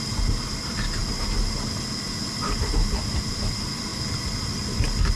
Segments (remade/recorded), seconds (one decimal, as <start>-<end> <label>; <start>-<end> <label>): 0.0-5.2 recorded